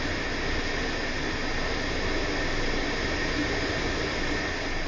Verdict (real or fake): real